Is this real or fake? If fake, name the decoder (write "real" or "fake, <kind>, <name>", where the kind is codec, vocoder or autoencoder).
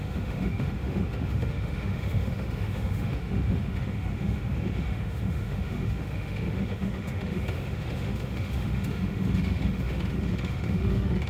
fake, autoencoder, DAC-VAE